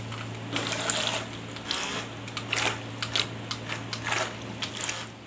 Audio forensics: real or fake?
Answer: real